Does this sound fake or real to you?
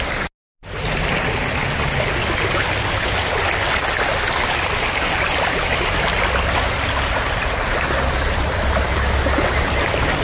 real